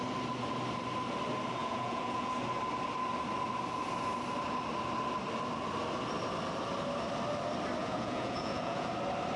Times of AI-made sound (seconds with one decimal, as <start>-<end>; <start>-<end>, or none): 1.6-2.3; 7.8-8.9